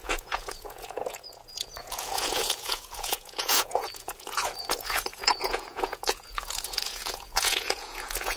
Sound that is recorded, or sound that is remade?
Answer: remade